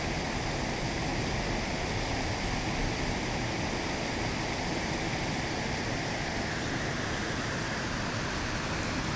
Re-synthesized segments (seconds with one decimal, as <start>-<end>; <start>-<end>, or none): none